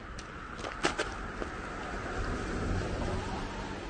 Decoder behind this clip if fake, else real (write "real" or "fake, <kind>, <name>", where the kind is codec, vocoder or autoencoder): real